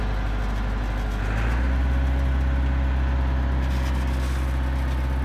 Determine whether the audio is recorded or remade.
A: recorded